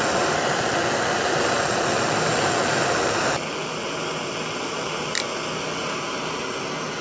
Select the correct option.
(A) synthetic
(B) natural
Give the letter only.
B